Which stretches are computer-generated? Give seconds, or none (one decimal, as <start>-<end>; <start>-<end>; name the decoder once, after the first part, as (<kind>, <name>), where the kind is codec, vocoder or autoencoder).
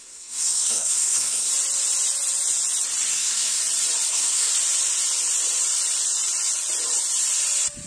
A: 0.0-1.5 (codec, SNAC); 3.1-3.6; 4.1-4.5